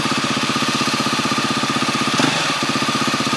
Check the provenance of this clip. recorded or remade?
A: remade